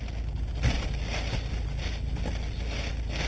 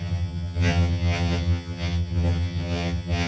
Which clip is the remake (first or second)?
second